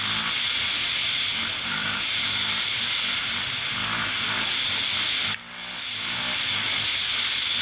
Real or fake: real